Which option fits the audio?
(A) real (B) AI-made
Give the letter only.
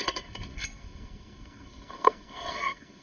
B